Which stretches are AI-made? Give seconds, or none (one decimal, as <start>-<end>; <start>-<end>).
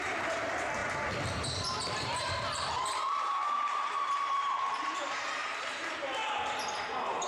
0.0-0.8; 1.4-6.2